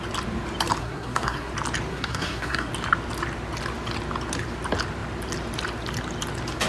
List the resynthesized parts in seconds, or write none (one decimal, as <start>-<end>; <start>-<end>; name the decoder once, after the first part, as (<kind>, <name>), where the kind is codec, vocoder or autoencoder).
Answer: 0.8-1.5 (codec, SNAC); 1.9-2.7